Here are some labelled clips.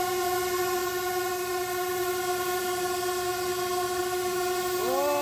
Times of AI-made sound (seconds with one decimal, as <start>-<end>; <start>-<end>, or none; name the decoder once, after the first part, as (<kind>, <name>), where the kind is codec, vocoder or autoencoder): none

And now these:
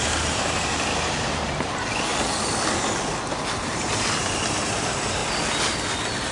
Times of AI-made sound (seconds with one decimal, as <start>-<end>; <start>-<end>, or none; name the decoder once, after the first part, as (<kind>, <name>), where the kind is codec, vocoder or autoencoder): 0.0-2.1 (vocoder, BigVGAN v2); 3.6-5.2

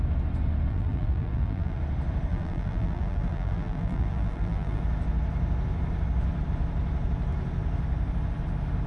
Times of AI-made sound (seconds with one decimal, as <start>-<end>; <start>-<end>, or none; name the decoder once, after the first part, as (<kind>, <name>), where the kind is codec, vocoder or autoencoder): 0.7-1.8 (vocoder, BigVGAN v2); 2.3-4.8

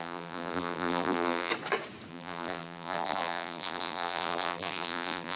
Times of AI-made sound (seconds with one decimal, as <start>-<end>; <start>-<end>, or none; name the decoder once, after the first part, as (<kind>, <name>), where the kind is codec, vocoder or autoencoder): 0.0-1.5 (vocoder, BigVGAN v2); 2.1-5.4

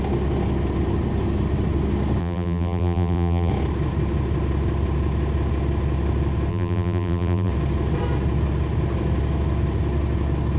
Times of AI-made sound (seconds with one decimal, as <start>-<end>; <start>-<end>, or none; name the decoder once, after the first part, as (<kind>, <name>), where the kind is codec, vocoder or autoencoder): 2.2-3.5 (vocoder, BigVGAN v2); 6.5-7.5

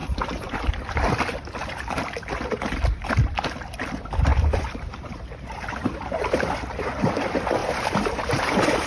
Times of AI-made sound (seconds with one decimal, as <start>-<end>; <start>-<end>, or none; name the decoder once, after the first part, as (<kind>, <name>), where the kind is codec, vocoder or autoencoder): 0.0-0.7 (vocoder, BigVGAN v2); 4.3-7.1; 7.6-8.9

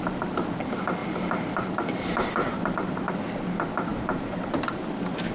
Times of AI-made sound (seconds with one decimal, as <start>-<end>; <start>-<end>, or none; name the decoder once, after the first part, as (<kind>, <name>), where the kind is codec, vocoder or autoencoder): 1.0-3.1 (vocoder, BigVGAN v2); 3.9-4.7